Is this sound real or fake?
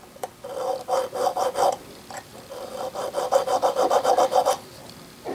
fake